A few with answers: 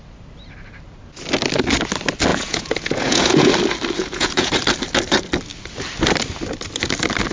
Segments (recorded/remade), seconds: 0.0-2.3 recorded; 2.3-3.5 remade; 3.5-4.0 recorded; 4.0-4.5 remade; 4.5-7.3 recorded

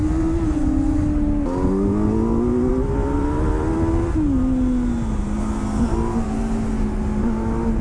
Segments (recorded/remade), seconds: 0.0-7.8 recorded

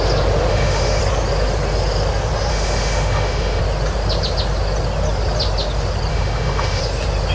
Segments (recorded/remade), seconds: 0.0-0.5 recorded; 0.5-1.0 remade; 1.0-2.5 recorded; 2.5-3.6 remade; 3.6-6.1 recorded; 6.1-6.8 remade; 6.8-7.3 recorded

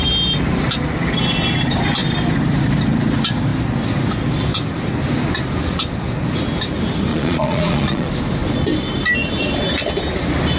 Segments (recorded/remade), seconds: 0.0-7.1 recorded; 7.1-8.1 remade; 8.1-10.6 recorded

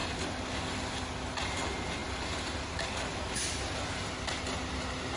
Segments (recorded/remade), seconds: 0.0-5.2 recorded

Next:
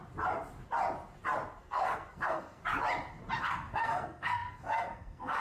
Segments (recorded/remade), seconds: 0.0-1.6 recorded; 1.6-2.6 remade; 2.6-3.4 recorded; 3.4-5.4 remade